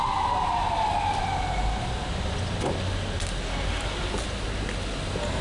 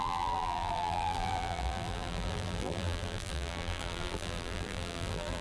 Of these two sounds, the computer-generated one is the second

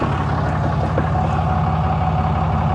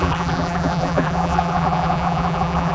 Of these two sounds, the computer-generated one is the second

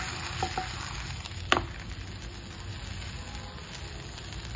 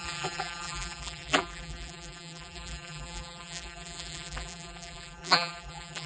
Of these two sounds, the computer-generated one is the second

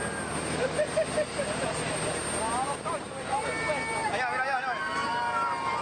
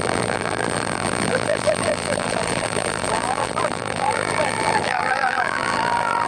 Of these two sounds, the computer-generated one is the second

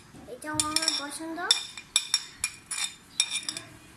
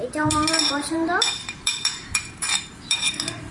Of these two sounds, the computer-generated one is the second